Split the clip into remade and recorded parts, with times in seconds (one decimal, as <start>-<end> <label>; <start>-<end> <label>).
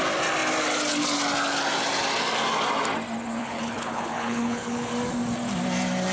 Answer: 0.0-3.4 recorded; 3.4-4.9 remade; 4.9-6.1 recorded